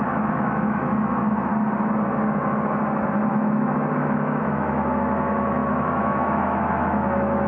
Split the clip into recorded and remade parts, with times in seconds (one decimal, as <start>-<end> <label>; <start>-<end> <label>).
0.0-1.5 remade; 1.5-3.3 recorded; 3.3-7.5 remade